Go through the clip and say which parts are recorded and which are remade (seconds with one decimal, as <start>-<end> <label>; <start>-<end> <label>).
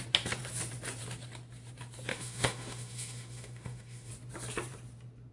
0.0-2.1 recorded; 2.1-4.1 remade; 4.1-5.3 recorded